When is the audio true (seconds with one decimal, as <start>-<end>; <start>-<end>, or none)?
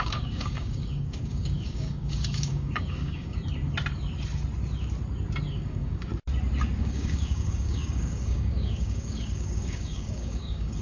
3.4-5.5; 6.1-6.8